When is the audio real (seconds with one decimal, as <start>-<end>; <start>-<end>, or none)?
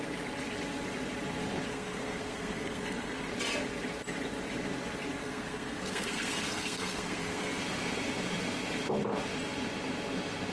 0.0-1.7; 3.3-5.2; 7.6-10.5